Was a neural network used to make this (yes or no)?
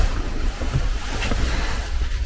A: yes